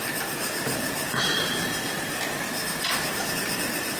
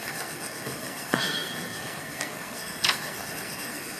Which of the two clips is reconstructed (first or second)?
second